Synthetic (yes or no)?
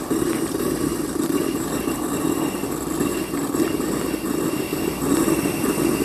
no